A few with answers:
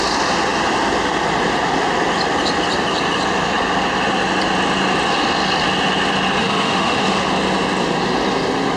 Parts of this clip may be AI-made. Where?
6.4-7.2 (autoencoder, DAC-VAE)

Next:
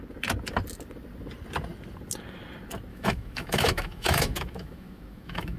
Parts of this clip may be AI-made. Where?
2.9-5.6 (autoencoder, DAC-VAE)

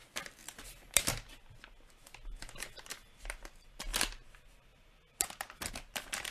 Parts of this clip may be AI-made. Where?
none

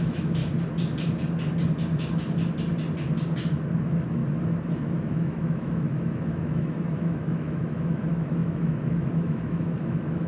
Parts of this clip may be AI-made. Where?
0.0-0.4 (autoencoder, DAC-VAE); 3.8-4.2; 4.7-10.3